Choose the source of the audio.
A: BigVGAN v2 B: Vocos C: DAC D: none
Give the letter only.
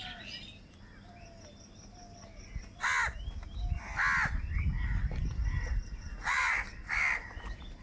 D